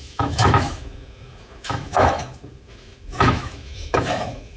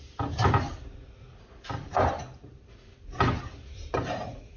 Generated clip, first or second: first